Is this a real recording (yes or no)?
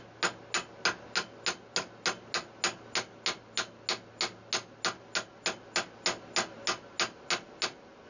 yes